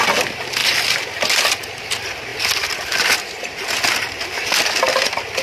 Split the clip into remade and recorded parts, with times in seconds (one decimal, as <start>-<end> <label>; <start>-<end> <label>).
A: 0.0-5.4 recorded